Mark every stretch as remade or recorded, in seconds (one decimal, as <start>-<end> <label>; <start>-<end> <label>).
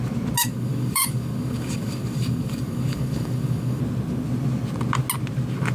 0.0-0.4 recorded; 0.4-3.8 remade; 3.8-5.7 recorded